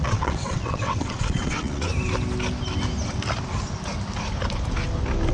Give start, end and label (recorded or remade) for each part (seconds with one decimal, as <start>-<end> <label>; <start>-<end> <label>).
0.0-1.9 remade; 1.9-5.3 recorded